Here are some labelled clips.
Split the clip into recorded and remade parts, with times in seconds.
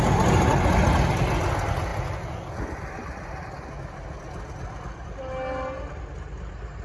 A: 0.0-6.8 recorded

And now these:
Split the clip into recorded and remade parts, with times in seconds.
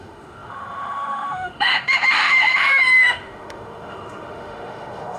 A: 0.0-5.2 remade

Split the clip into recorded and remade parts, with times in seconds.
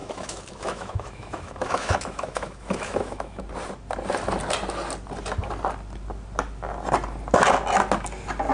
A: 0.0-3.4 remade; 3.4-8.5 recorded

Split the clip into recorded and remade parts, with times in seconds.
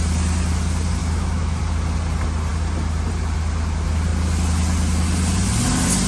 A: 0.0-1.0 recorded; 1.0-1.6 remade; 1.6-6.1 recorded